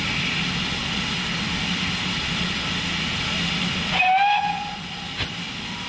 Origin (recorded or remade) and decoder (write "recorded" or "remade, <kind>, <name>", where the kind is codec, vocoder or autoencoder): recorded